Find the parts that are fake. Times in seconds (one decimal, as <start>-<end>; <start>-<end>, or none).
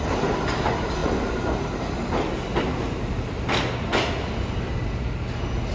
none